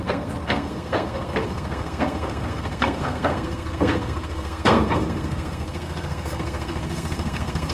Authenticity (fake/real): fake